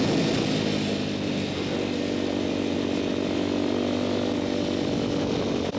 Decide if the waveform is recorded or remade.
recorded